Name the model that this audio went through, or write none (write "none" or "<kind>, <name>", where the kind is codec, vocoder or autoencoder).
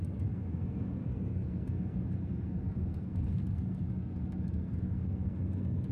codec, SNAC